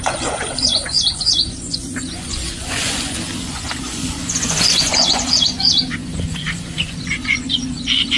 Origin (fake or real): fake